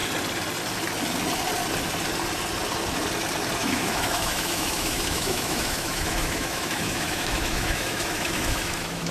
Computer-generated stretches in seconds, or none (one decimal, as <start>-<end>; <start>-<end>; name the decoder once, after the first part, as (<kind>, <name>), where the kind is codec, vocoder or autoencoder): 3.6-9.1 (autoencoder, DAC-VAE)